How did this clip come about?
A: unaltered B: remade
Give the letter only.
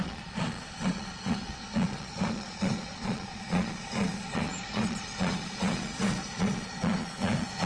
B